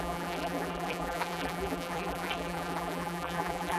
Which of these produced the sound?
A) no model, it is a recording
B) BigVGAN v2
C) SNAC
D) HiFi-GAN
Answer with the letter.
B